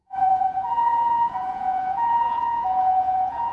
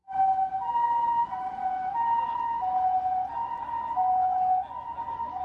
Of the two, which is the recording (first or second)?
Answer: second